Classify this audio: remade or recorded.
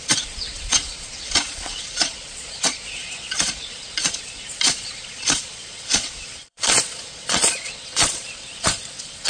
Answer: remade